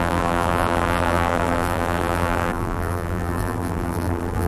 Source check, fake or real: fake